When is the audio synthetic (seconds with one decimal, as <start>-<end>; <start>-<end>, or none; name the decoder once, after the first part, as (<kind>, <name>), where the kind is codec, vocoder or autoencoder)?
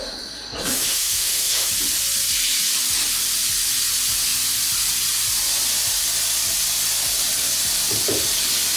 0.7-1.7 (autoencoder, DAC-VAE)